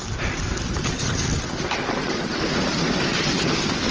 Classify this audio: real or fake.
real